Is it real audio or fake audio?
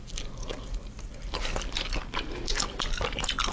real